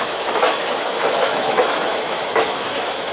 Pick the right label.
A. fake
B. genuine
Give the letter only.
A